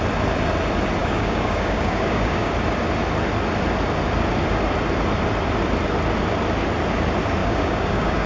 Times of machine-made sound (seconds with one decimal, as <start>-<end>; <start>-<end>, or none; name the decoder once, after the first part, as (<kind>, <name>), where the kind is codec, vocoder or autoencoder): 1.0-2.5 (codec, DAC); 7.4-8.3